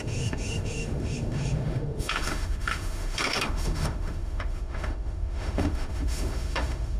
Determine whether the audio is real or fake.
fake